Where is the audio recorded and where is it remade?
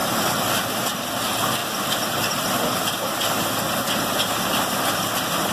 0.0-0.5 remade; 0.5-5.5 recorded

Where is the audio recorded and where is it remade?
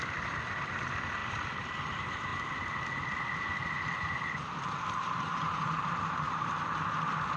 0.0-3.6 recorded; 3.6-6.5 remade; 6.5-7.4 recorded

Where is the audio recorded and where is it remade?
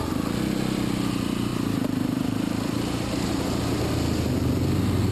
0.0-1.5 recorded; 1.5-3.8 remade; 3.8-5.1 recorded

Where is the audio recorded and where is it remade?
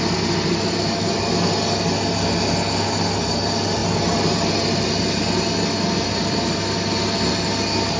0.0-8.0 recorded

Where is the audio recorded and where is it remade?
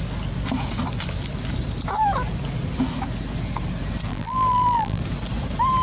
0.0-4.1 recorded; 4.1-5.0 remade; 5.0-5.8 recorded